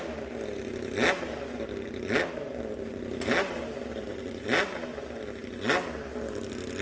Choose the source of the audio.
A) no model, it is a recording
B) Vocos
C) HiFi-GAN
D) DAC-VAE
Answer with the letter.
A